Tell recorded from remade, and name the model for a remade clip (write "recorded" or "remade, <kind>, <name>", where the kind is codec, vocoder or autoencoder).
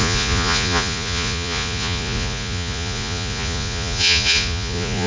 remade, vocoder, Vocos